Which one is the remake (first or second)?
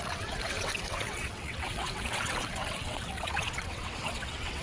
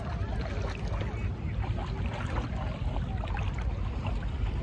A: first